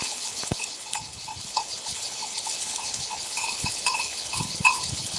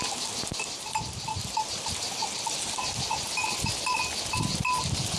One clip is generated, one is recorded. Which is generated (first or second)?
first